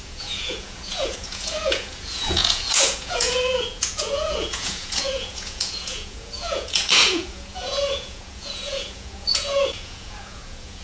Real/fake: fake